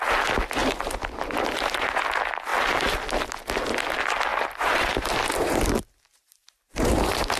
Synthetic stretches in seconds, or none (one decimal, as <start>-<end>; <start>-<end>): 0.6-2.0; 4.3-7.4